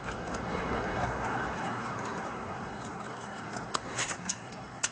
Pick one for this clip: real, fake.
fake